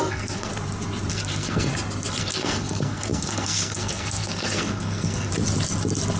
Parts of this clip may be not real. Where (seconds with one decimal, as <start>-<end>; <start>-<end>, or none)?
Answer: 0.0-0.5; 1.1-1.7; 2.2-5.3